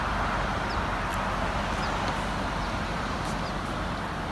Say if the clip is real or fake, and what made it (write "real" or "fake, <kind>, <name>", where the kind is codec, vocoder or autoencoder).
real